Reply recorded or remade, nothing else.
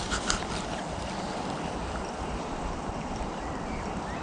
remade